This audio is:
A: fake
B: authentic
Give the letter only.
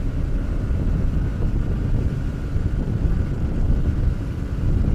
A